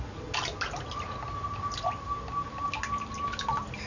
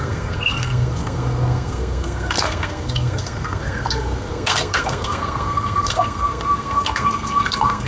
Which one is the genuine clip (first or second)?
first